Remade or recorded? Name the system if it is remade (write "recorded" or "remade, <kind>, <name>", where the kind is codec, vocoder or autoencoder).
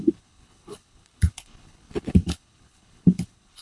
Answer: remade, codec, HILCodec